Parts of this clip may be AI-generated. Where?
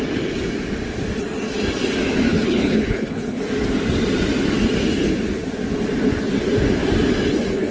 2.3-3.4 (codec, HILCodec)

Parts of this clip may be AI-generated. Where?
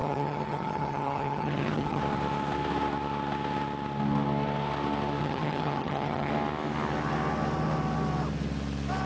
0.0-2.0 (vocoder, HiFi-GAN); 5.2-6.3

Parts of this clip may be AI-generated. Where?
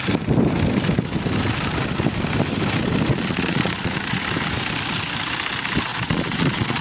3.1-4.2 (vocoder, Vocos); 5.9-6.8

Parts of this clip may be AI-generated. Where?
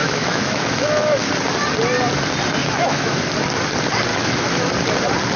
0.0-1.3 (autoencoder, DAC-VAE); 2.6-3.2; 4.1-4.7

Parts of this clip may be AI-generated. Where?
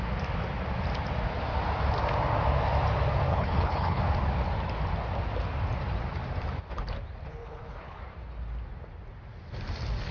3.3-4.0 (codec, HILCodec); 7.3-8.0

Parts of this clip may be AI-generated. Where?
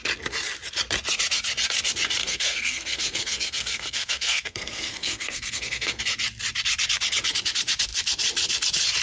2.2-6.0 (codec, SNAC)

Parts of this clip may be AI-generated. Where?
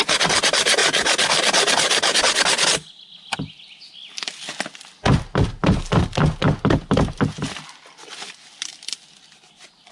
none